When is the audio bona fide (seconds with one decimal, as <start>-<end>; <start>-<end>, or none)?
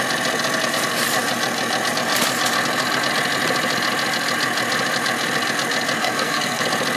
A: 0.0-6.0; 6.6-7.0